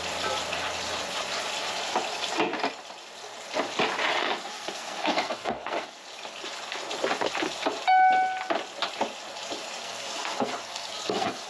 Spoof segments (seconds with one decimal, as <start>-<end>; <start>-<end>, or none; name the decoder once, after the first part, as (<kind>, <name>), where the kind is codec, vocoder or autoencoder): 4.2-6.0 (codec, SNAC); 9.8-11.5